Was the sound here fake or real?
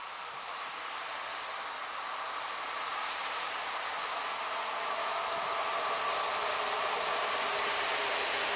real